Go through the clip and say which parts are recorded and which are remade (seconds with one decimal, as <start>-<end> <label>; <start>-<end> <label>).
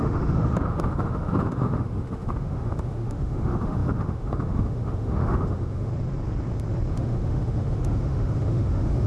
0.0-5.9 remade; 5.9-6.9 recorded; 6.9-9.1 remade